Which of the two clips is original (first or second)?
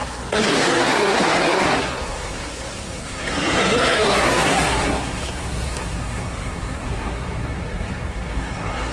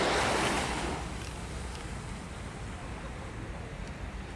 second